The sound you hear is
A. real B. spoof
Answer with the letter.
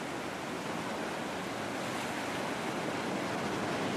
A